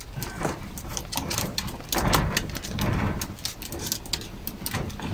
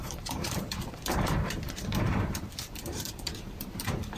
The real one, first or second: first